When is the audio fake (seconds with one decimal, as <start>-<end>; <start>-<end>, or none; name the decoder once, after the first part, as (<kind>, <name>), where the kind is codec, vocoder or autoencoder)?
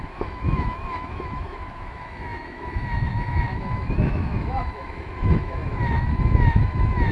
0.0-7.1 (autoencoder, DAC-VAE)